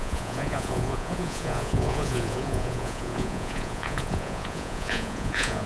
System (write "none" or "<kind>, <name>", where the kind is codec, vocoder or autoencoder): vocoder, Vocos